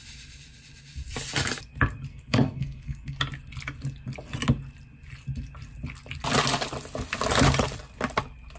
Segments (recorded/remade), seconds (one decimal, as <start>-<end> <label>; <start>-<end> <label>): 0.0-2.1 recorded; 2.1-3.2 remade; 3.2-8.6 recorded